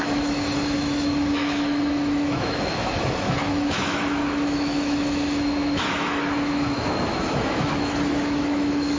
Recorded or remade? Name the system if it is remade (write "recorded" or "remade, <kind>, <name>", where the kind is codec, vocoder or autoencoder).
remade, autoencoder, DAC-VAE